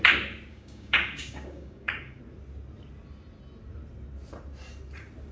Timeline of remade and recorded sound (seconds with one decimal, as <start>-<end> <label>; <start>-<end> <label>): 0.0-0.5 recorded; 0.5-2.2 remade; 2.2-5.3 recorded